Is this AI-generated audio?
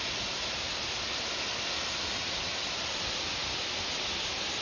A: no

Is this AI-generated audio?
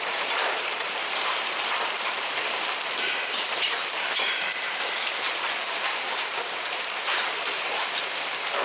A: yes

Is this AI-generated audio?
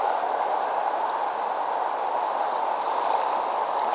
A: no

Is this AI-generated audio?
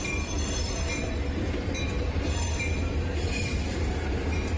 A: yes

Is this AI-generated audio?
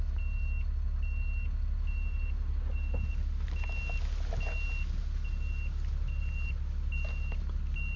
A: no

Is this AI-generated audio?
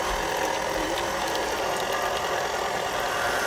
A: no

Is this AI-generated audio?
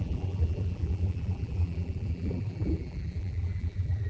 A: yes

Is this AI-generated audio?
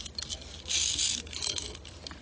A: no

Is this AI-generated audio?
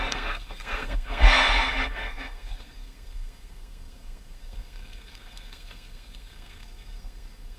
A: yes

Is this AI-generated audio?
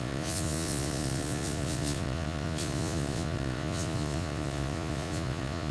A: yes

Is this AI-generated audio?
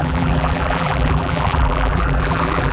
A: yes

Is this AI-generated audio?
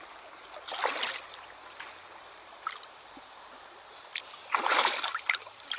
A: no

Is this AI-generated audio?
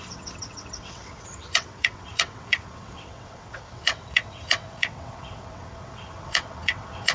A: yes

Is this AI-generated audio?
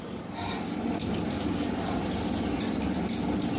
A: no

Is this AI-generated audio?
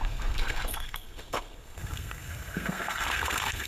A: yes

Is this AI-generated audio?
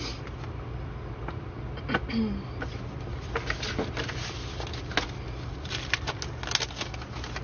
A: no